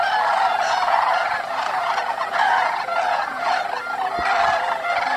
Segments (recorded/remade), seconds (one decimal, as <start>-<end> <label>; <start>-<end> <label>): 0.0-0.5 recorded; 0.5-3.6 remade; 3.6-5.2 recorded